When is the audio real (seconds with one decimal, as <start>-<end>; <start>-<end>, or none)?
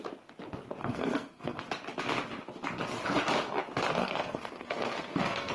0.0-0.8; 1.6-4.0